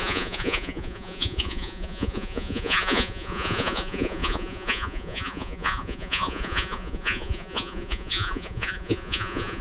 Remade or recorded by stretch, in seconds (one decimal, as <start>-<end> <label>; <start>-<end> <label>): 0.0-9.6 remade